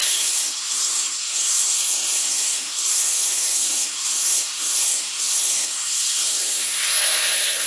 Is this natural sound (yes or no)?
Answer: no